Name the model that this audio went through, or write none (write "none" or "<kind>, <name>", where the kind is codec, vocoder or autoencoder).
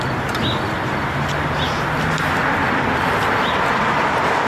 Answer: none